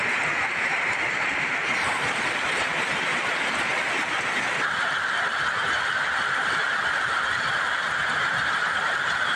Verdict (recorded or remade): recorded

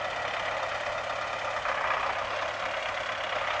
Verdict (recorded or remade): recorded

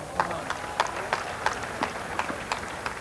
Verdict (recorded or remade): recorded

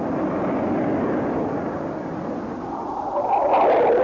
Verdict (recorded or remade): recorded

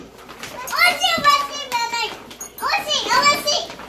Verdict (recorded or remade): recorded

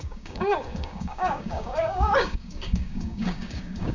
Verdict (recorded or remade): remade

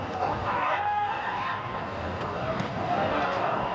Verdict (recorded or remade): remade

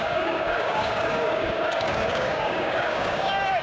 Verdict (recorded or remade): remade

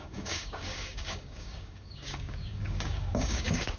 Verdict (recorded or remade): remade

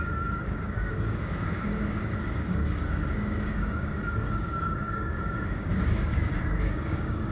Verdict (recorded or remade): remade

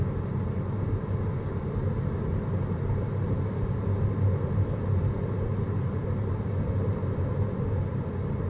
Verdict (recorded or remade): recorded